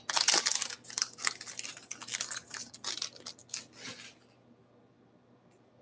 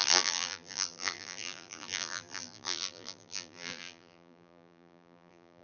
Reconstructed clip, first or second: second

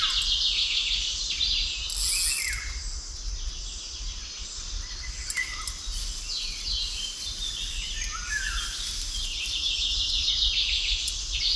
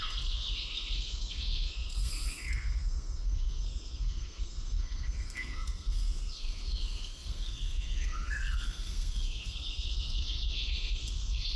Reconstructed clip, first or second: second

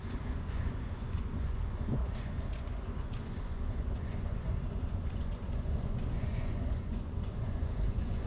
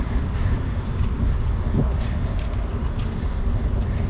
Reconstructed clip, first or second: first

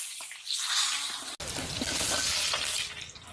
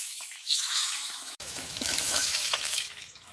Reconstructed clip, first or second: second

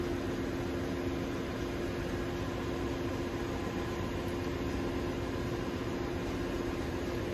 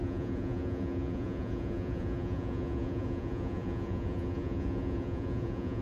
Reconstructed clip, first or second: second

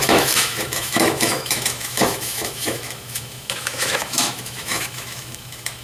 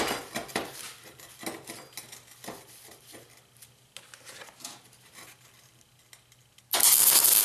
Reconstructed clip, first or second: first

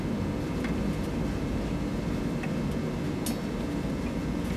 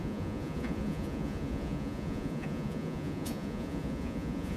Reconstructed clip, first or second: second